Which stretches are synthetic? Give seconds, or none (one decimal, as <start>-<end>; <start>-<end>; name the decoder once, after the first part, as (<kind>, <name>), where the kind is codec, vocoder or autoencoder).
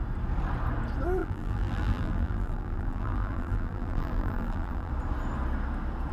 1.2-4.9 (vocoder, BigVGAN v2)